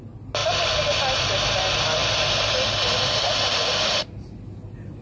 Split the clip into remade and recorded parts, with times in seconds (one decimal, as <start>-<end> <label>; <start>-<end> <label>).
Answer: 0.0-5.0 recorded